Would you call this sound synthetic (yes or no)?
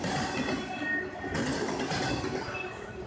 no